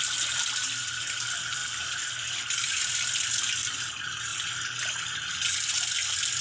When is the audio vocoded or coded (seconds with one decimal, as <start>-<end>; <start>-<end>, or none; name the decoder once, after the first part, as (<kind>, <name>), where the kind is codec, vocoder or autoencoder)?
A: 1.6-2.9 (vocoder, BigVGAN v2)